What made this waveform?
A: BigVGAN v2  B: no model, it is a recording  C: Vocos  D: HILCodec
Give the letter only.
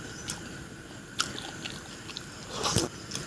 B